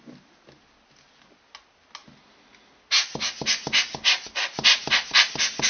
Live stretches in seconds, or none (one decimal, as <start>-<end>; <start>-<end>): 0.0-5.7